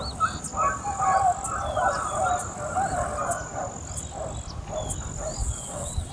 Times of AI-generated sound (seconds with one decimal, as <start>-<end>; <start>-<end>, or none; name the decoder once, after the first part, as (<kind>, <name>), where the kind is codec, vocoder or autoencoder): 5.4-6.1 (vocoder, WaveNeXt)